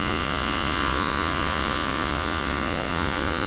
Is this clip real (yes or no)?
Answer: no